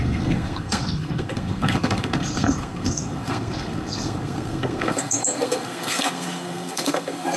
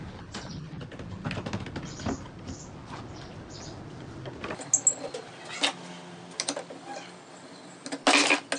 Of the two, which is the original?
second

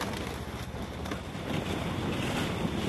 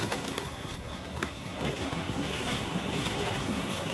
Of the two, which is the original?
first